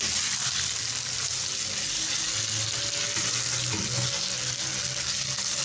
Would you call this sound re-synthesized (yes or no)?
no